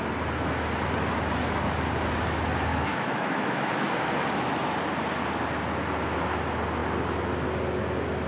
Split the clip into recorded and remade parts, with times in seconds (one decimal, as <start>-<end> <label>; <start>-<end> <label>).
0.0-2.7 recorded; 2.7-3.7 remade; 3.7-8.3 recorded